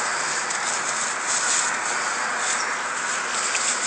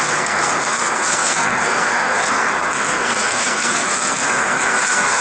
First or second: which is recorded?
first